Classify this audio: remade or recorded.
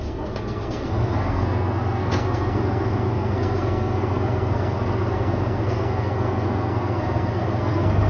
remade